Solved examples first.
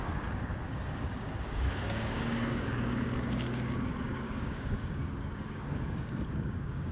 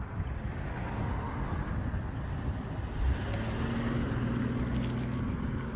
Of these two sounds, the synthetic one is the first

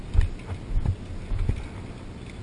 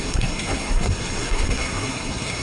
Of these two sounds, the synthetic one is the second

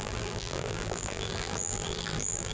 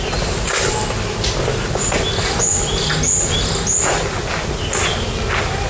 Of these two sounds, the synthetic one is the first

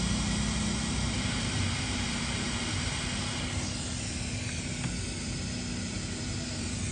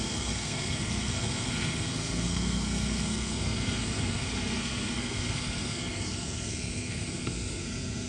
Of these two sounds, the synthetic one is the second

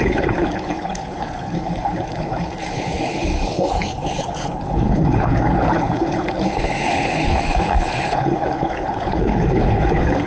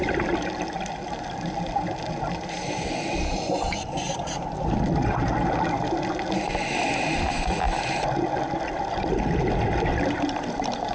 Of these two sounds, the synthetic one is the first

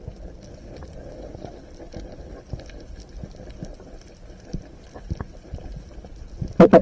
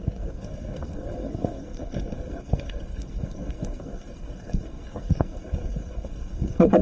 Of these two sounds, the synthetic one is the second